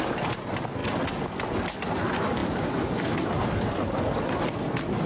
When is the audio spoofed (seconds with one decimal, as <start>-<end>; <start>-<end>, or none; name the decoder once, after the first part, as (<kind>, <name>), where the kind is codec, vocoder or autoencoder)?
none